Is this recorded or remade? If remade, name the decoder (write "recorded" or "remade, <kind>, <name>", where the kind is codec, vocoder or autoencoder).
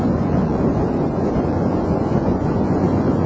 remade, vocoder, Vocos